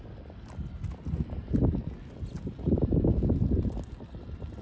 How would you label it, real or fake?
real